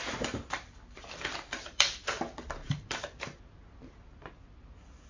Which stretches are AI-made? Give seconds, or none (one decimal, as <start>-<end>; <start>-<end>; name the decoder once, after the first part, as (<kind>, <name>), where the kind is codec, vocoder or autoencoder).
0.0-3.1 (vocoder, BigVGAN v2)

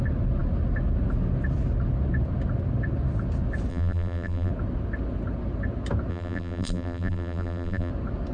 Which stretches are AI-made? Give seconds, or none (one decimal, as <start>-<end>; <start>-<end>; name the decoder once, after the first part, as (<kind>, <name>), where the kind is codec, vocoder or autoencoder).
3.7-4.5 (vocoder, BigVGAN v2); 6.1-7.9